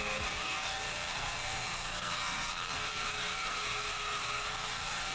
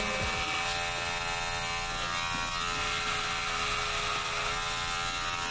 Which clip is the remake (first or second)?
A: first